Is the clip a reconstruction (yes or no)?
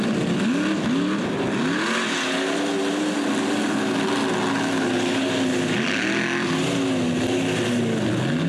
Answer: no